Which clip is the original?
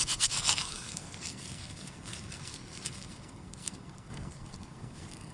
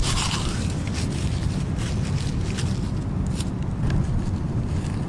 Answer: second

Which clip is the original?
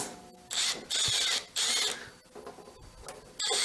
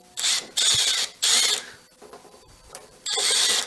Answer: first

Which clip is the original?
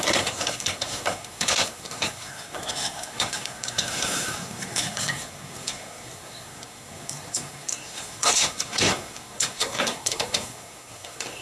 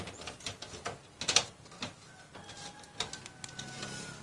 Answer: second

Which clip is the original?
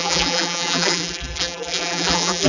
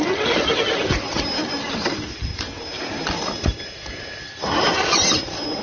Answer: second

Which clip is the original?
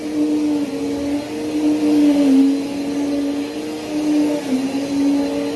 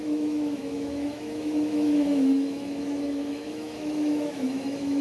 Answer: first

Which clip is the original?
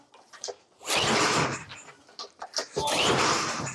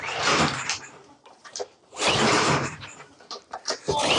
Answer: first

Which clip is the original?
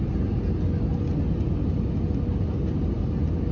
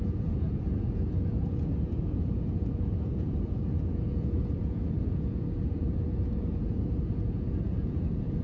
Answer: first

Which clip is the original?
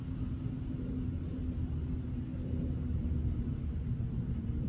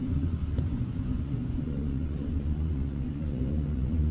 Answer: first